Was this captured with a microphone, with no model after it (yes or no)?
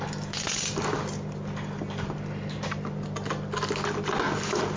yes